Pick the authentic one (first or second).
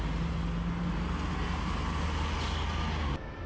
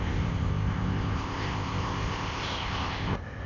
first